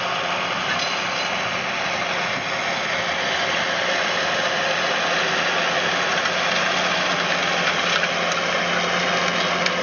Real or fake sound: real